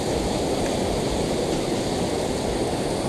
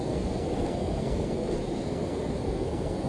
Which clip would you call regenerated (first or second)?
second